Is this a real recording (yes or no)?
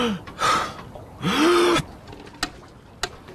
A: yes